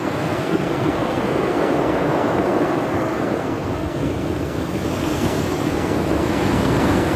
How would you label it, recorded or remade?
remade